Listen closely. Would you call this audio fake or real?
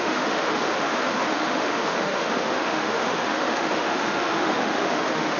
fake